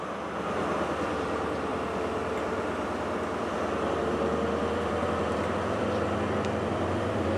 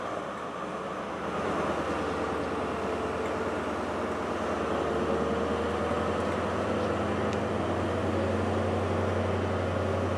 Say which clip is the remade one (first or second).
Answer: first